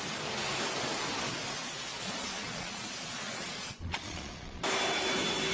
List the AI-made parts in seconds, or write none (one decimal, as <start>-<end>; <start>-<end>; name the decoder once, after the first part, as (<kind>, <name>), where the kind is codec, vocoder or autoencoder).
1.6-4.6 (vocoder, Vocos)